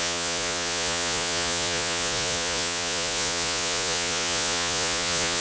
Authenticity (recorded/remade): remade